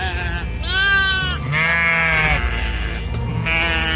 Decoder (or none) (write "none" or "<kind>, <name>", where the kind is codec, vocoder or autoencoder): none